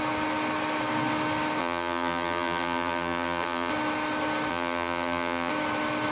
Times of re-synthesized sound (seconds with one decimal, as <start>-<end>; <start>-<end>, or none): 1.6-3.7; 4.5-5.5